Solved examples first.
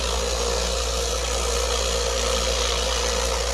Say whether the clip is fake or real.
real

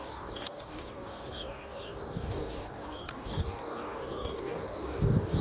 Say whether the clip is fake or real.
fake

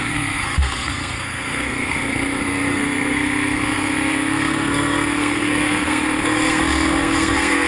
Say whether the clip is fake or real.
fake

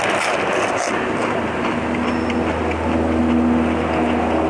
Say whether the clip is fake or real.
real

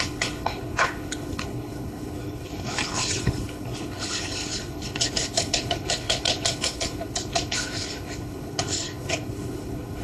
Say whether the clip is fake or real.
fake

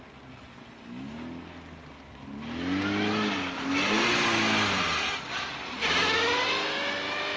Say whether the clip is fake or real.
real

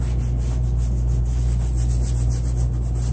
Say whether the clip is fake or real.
real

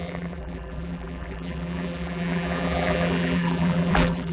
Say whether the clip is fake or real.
fake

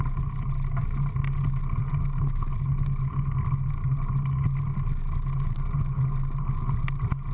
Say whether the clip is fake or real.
real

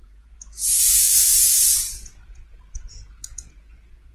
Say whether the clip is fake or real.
fake